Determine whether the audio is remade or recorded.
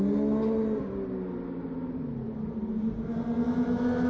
recorded